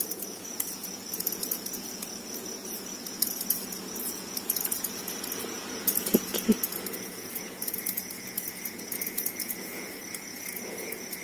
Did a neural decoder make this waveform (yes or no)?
yes